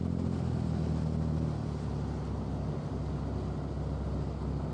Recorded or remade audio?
recorded